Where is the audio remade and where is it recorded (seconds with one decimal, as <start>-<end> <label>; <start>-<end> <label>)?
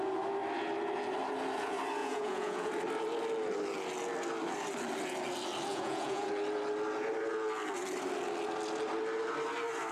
0.0-2.0 recorded; 2.0-2.7 remade; 2.7-5.7 recorded; 5.7-6.3 remade; 6.3-9.9 recorded